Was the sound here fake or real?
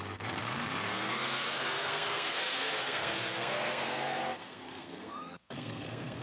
fake